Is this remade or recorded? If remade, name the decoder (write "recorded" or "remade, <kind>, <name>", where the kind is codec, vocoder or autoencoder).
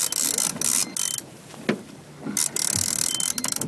recorded